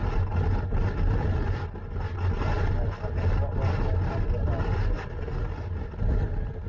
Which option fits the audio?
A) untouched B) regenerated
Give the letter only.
A